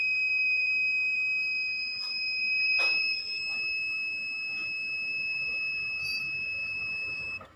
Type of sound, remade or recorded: remade